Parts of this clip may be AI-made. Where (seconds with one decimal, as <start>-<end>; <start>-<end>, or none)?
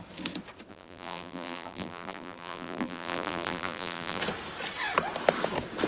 0.7-4.2